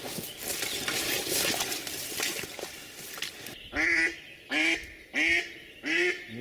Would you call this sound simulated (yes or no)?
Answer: no